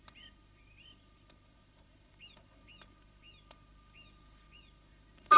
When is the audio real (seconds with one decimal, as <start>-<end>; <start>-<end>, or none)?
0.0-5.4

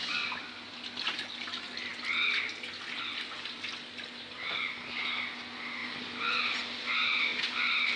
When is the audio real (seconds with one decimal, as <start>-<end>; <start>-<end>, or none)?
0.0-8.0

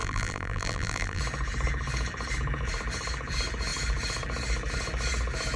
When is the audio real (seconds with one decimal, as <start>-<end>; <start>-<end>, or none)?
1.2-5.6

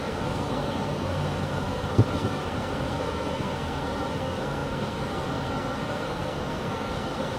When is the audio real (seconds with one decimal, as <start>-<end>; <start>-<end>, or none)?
none